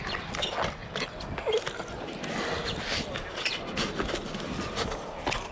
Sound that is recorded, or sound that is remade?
recorded